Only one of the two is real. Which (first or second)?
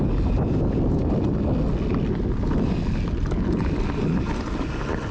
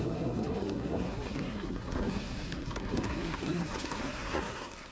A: first